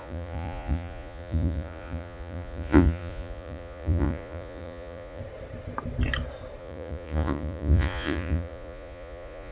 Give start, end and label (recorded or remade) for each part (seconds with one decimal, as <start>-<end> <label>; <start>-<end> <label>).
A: 0.0-5.2 remade; 5.2-6.6 recorded; 6.6-9.5 remade